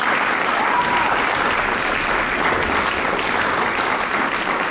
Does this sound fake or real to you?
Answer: real